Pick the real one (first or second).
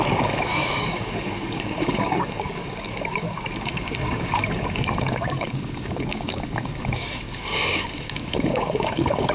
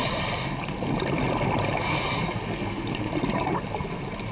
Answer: second